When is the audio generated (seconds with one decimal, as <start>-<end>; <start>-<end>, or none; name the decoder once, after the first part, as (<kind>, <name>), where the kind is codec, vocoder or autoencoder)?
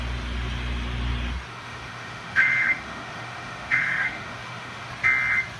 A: 1.5-4.9 (autoencoder, DAC-VAE)